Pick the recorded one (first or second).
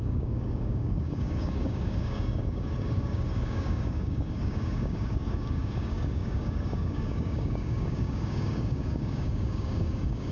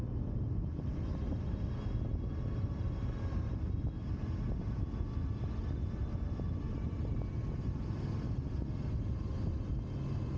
second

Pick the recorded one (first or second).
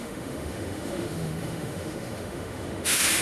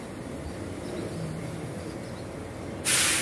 second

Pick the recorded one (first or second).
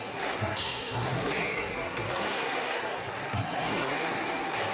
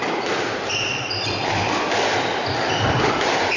second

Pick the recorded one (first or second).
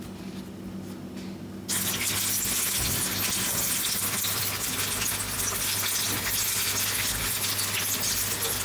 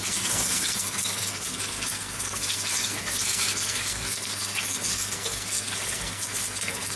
first